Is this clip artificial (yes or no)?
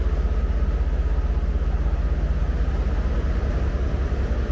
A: no